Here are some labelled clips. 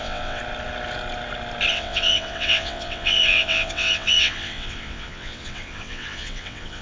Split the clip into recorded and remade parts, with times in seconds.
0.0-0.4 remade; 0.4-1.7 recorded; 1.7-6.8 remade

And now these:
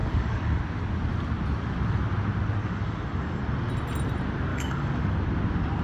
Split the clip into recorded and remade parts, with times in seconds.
0.0-0.6 remade; 0.6-2.6 recorded; 2.6-3.4 remade; 3.4-4.5 recorded; 4.5-5.1 remade; 5.1-5.8 recorded

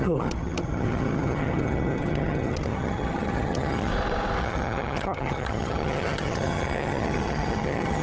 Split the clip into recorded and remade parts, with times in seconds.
0.0-3.9 remade; 3.9-4.4 recorded; 4.4-8.0 remade

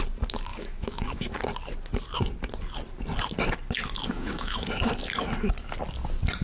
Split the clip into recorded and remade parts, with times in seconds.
0.0-0.5 recorded; 0.5-1.3 remade; 1.3-4.1 recorded; 4.1-4.7 remade; 4.7-6.4 recorded

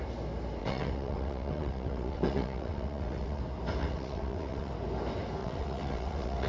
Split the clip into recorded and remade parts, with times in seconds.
0.0-0.6 recorded; 0.6-3.4 remade; 3.4-3.8 recorded; 3.8-4.7 remade; 4.7-5.4 recorded; 5.4-6.5 remade

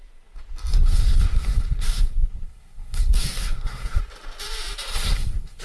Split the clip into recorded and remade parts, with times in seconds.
0.0-0.7 recorded; 0.7-4.0 remade; 4.0-4.9 recorded; 4.9-5.6 remade

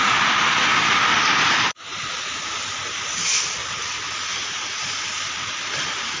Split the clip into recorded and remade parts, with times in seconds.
0.0-6.2 recorded